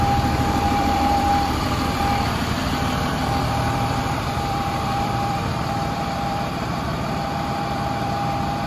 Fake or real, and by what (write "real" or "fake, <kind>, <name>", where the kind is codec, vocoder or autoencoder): fake, vocoder, BigVGAN v2